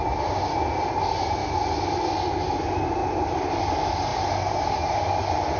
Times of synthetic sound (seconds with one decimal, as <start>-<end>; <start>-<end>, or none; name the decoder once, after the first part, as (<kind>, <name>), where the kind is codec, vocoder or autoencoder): none